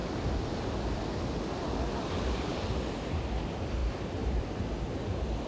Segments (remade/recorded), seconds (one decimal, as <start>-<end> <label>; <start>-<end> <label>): 0.0-2.5 recorded; 2.5-3.2 remade; 3.2-3.8 recorded; 3.8-4.4 remade; 4.4-5.5 recorded